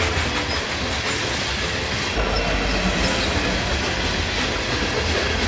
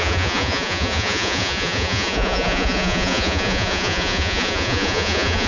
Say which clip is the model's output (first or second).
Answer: second